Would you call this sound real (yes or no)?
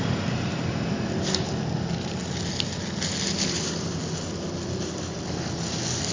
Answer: yes